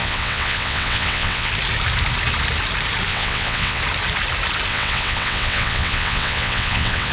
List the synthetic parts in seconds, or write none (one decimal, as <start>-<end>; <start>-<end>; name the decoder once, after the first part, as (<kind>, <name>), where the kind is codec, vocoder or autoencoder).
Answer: 0.0-1.5 (vocoder, WaveNeXt); 3.1-3.8; 4.7-7.1